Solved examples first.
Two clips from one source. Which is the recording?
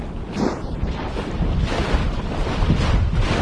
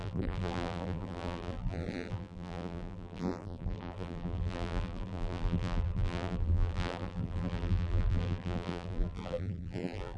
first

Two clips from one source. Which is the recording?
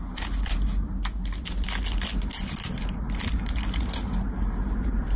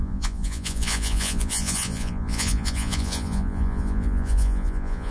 first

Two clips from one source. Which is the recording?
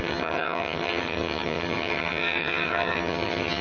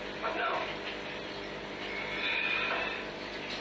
second